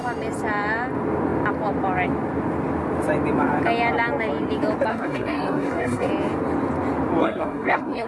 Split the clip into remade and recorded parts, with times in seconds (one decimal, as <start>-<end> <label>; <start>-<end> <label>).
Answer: 0.0-4.9 recorded; 4.9-6.1 remade; 6.1-7.2 recorded; 7.2-8.1 remade